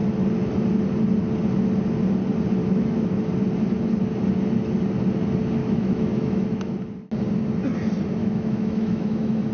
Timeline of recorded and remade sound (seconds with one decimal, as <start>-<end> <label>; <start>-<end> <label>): 0.0-2.6 recorded; 2.6-3.2 remade; 3.2-5.6 recorded; 5.6-6.7 remade; 6.7-8.2 recorded; 8.2-9.5 remade